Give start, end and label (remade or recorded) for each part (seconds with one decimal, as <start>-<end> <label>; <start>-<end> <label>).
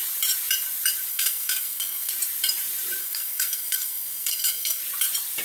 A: 0.0-1.1 recorded; 1.1-2.1 remade; 2.1-3.0 recorded; 3.0-4.8 remade; 4.8-5.4 recorded